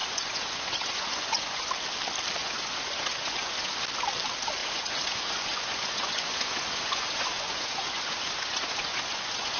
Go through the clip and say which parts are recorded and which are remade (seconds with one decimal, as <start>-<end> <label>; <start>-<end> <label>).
0.0-1.7 remade; 1.7-2.4 recorded; 2.4-3.7 remade; 3.7-4.6 recorded; 4.6-9.6 remade